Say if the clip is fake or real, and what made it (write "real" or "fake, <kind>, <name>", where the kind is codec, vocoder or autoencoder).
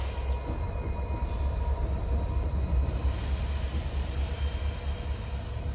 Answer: real